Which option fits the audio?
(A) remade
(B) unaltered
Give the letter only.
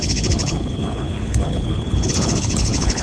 A